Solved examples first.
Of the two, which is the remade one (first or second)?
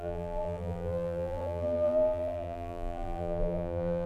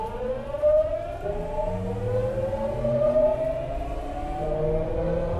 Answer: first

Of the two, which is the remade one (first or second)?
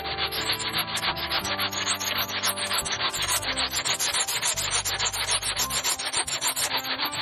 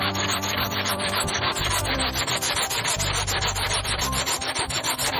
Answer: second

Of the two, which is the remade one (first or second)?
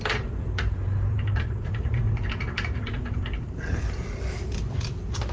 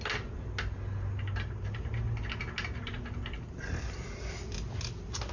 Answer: first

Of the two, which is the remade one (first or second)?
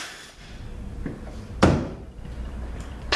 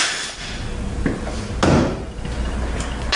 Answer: first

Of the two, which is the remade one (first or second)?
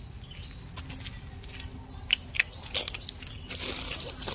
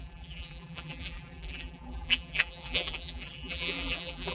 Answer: second